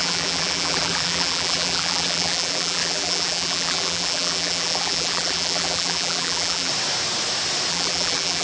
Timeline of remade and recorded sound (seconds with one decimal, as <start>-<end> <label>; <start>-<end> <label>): 0.0-6.7 remade; 6.7-7.7 recorded; 7.7-8.4 remade